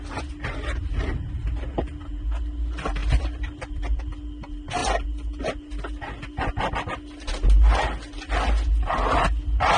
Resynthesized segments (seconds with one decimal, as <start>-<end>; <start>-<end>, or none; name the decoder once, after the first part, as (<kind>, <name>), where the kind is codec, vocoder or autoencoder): none